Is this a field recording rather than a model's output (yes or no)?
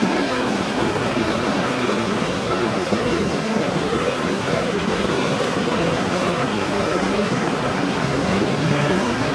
no